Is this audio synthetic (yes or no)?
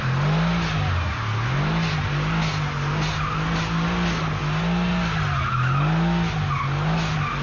no